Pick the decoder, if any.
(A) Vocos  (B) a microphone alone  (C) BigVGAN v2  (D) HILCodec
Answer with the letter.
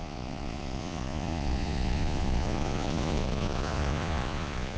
A